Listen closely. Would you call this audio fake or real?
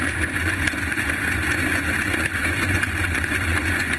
fake